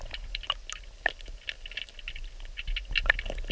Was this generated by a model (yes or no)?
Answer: no